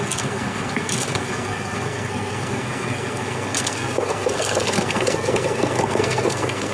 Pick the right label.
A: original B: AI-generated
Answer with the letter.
B